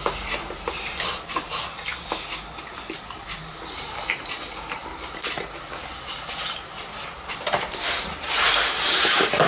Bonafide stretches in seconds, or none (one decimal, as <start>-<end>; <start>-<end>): 1.9-3.0; 4.8-5.4